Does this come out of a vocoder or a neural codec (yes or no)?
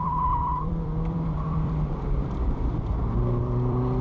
yes